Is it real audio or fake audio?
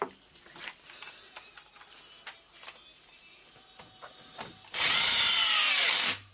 real